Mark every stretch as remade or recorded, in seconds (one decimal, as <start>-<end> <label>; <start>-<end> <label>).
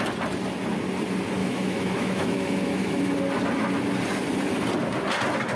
0.0-1.4 recorded; 1.4-3.2 remade; 3.2-5.5 recorded